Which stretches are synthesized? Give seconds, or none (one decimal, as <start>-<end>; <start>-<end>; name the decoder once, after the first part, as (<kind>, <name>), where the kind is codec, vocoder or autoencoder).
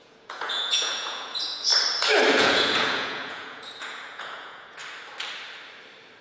0.0-1.7 (vocoder, Vocos); 2.3-4.8